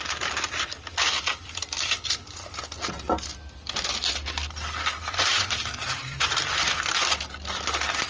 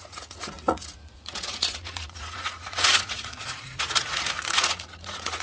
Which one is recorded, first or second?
first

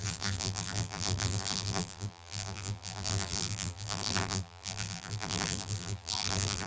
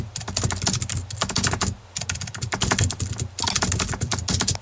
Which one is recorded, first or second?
second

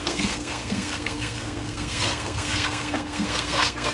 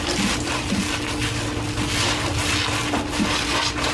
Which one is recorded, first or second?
second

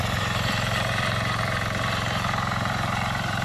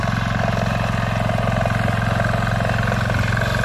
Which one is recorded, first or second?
second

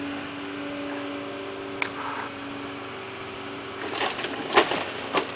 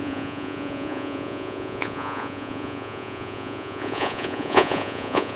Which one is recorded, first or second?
first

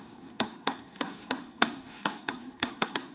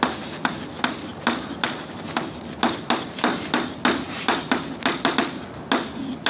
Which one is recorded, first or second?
second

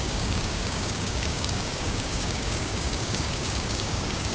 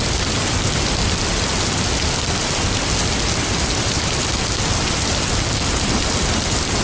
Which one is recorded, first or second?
second